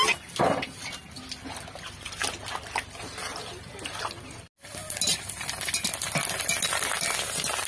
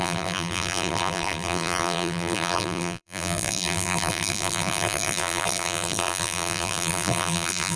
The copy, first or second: second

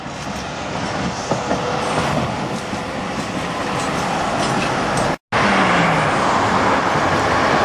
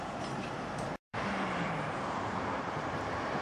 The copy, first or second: second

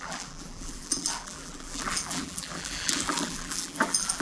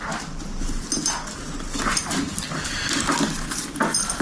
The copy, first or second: first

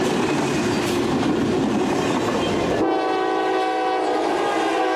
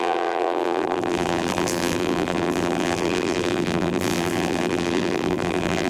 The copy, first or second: second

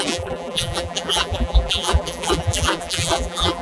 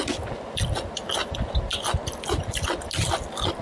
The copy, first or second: first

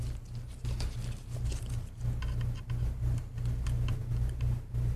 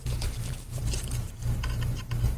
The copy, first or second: second